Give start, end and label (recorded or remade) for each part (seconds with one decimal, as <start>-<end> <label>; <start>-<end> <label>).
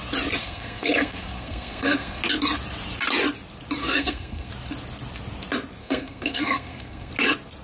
0.0-0.4 recorded; 0.4-2.2 remade; 2.2-3.8 recorded; 3.8-4.5 remade; 4.5-5.8 recorded; 5.8-7.1 remade; 7.1-7.6 recorded